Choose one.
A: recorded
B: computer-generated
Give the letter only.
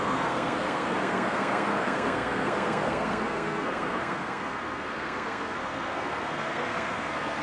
B